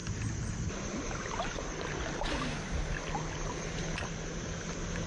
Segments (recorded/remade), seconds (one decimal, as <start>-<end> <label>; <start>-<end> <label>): 0.0-5.1 recorded

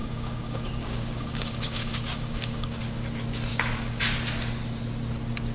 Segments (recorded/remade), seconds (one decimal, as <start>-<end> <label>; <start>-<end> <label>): 0.0-2.8 remade; 2.8-3.5 recorded; 3.5-4.0 remade; 4.0-5.5 recorded